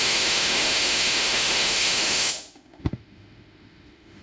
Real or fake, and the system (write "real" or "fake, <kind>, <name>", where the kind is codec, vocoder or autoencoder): fake, autoencoder, DAC-VAE